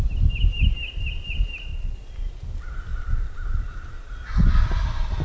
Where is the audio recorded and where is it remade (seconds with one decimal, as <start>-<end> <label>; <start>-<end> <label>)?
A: 0.0-1.7 recorded; 1.7-2.4 remade; 2.4-2.9 recorded; 2.9-3.7 remade; 3.7-5.2 recorded